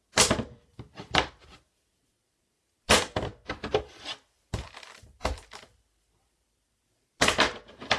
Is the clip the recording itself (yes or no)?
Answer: no